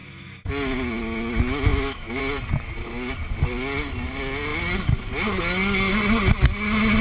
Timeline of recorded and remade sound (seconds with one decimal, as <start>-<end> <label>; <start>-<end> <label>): 0.0-0.5 remade; 0.5-1.7 recorded; 1.7-2.2 remade; 2.2-7.0 recorded